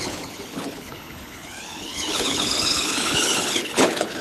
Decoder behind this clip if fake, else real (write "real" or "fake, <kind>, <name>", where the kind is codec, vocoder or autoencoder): fake, codec, HILCodec